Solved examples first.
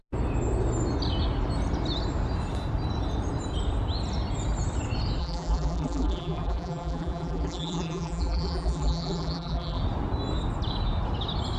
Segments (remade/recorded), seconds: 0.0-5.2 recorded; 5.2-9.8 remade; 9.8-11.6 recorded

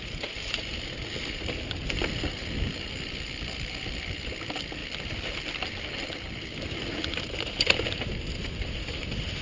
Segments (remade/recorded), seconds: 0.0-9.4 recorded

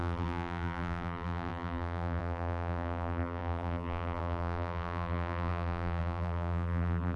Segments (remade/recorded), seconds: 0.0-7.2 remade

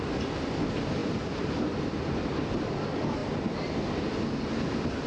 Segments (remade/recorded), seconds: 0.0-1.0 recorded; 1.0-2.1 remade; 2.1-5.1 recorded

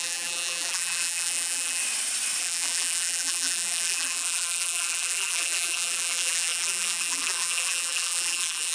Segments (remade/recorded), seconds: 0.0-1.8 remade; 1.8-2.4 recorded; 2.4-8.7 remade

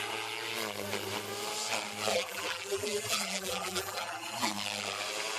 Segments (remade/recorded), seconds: 0.0-2.1 recorded; 2.1-4.5 remade; 4.5-5.4 recorded